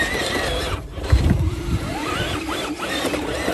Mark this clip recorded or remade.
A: remade